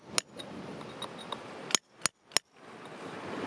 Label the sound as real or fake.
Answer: real